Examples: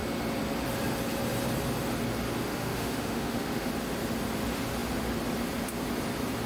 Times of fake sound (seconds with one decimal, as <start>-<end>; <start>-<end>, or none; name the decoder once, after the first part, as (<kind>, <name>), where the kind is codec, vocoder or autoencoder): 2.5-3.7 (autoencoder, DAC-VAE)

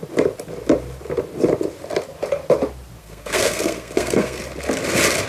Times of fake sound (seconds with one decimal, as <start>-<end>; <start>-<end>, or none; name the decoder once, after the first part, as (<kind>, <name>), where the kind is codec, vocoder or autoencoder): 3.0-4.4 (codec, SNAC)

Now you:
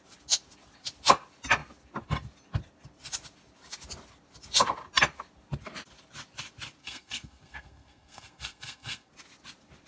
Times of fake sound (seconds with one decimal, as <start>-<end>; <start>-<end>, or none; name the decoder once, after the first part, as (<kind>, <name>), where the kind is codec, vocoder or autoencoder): 6.8-9.1 (codec, SNAC)